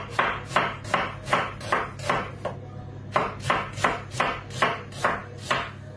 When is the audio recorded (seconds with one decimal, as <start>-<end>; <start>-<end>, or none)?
0.0-6.0